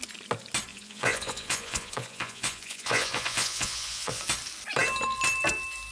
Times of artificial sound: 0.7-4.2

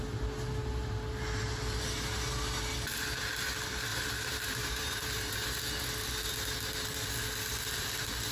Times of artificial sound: 3.9-5.6

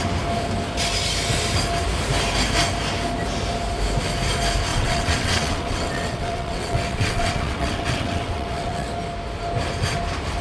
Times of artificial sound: 4.7-8.9

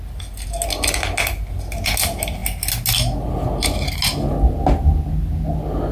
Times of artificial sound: none

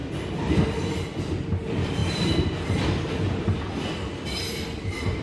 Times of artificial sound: none

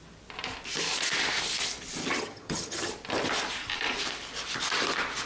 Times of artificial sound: 2.0-2.9

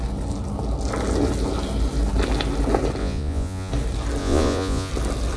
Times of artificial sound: 3.0-3.7; 4.2-4.9

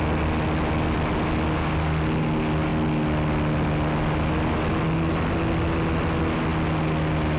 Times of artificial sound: none